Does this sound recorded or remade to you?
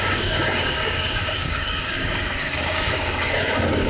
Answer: remade